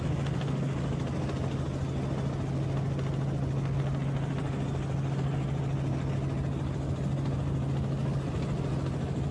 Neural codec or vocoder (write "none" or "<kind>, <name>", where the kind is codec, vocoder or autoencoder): none